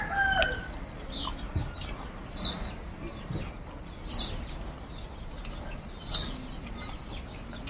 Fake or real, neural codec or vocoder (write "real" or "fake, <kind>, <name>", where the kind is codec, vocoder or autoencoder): real